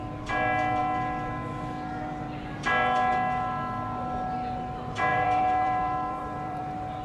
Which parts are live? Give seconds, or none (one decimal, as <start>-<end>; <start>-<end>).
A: 0.0-5.1; 6.6-7.0